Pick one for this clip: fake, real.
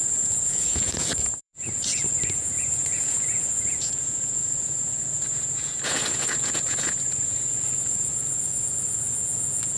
fake